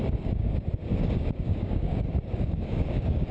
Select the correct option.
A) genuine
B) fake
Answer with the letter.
B